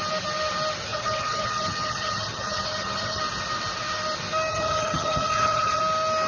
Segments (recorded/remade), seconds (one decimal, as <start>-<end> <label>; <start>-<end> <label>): 0.0-0.9 recorded; 0.9-3.2 remade; 3.2-4.5 recorded; 4.5-5.8 remade; 5.8-6.3 recorded